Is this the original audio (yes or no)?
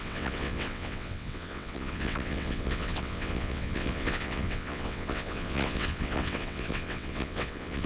no